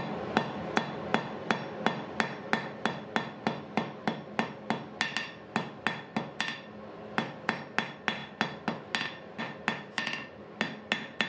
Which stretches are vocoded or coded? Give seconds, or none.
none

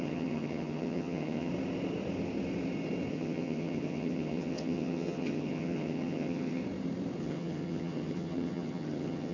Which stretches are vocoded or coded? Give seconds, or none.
0.0-1.5 (vocoder, HiFi-GAN); 3.1-6.6; 7.2-9.3